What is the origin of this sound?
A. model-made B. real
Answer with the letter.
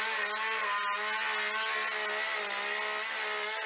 B